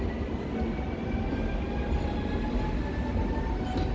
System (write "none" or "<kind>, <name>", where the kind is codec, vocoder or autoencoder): none